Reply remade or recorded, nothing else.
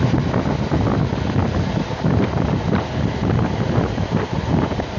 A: recorded